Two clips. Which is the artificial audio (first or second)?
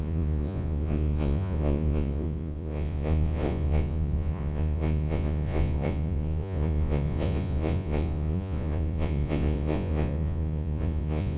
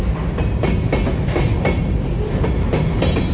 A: first